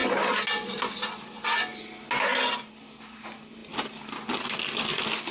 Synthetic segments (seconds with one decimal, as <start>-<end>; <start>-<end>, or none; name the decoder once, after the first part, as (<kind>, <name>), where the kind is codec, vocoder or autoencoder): none